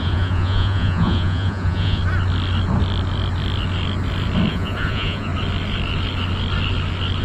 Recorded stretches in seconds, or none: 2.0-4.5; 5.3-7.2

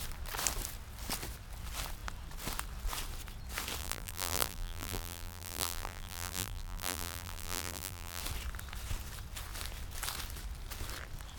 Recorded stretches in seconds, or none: 0.0-3.8; 8.2-11.4

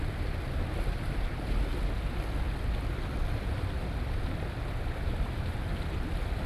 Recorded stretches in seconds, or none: 0.0-1.7; 5.6-6.5

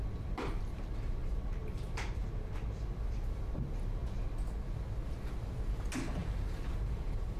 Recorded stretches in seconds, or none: 0.0-0.7; 2.3-6.2

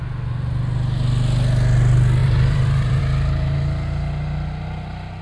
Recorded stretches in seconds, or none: 0.0-2.2; 3.0-5.2